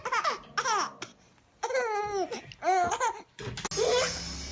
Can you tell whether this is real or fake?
real